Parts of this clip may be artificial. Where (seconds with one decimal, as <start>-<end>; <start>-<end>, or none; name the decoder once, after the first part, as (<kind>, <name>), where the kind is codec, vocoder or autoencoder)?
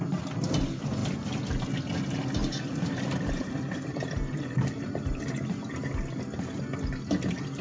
2.4-5.2 (vocoder, BigVGAN v2)